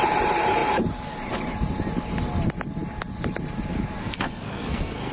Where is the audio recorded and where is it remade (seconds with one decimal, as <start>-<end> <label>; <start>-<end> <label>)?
0.0-4.0 recorded; 4.0-5.1 remade